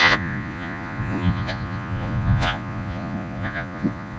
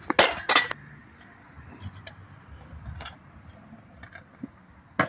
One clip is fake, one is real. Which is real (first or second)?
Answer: second